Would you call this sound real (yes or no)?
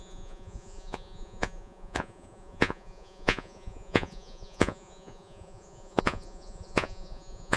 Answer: no